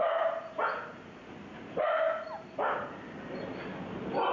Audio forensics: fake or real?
real